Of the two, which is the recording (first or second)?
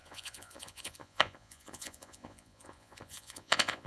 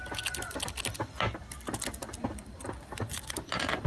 second